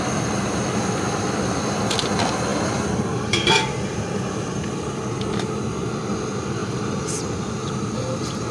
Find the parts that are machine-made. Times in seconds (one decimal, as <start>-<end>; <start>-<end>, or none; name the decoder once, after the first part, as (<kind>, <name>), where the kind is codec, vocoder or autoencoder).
2.5-5.0 (vocoder, BigVGAN v2)